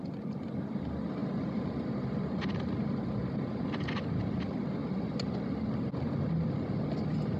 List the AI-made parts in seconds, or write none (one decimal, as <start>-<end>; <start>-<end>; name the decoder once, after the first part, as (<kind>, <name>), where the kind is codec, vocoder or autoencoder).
none

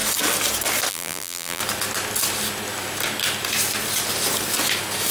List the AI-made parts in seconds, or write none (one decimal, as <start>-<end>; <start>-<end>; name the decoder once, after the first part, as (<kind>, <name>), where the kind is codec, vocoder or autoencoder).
0.9-1.6 (vocoder, BigVGAN v2)

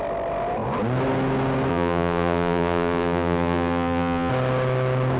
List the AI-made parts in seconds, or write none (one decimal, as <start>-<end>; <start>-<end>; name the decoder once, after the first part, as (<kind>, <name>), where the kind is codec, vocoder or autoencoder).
1.7-4.3 (vocoder, BigVGAN v2)

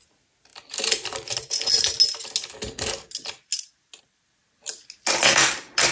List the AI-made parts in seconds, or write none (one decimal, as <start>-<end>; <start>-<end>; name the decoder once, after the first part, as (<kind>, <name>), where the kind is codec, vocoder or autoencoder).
none